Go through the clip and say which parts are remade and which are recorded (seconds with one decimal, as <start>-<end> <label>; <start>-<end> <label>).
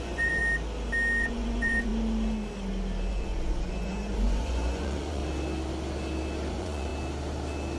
0.0-0.4 remade; 0.4-1.2 recorded; 1.2-1.9 remade; 1.9-3.1 recorded; 3.1-5.2 remade; 5.2-6.5 recorded; 6.5-6.9 remade; 6.9-7.8 recorded